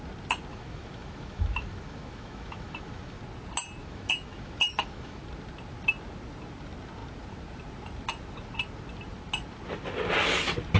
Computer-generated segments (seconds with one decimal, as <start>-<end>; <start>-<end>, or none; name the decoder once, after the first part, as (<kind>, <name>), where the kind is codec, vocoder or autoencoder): 0.5-3.2 (autoencoder, DAC-VAE); 3.8-5.2